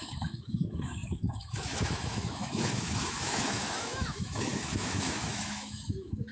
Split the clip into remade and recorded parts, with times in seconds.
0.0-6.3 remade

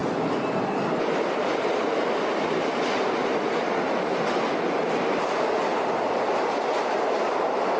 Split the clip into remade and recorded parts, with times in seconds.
0.0-7.8 recorded

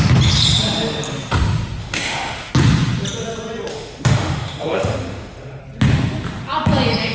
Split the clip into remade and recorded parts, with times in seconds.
0.0-1.8 recorded; 1.8-2.5 remade; 2.5-3.7 recorded; 3.7-5.6 remade; 5.6-7.1 recorded

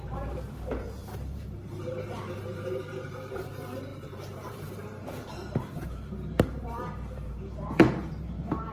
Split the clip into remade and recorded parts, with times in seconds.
0.0-8.7 remade

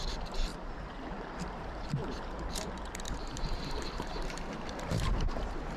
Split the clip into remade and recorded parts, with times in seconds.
0.0-5.8 remade

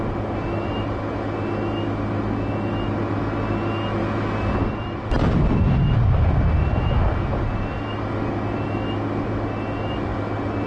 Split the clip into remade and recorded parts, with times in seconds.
0.0-10.7 recorded

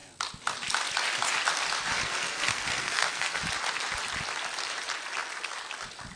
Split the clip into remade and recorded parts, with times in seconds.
0.0-1.9 recorded; 1.9-3.4 remade; 3.4-6.2 recorded